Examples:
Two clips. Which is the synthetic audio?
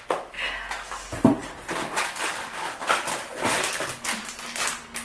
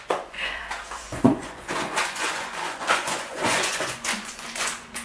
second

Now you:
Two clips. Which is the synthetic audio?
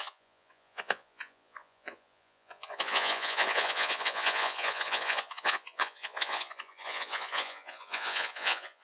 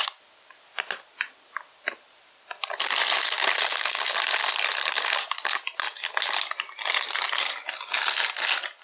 first